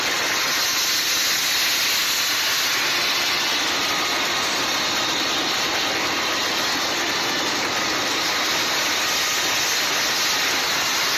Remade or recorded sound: recorded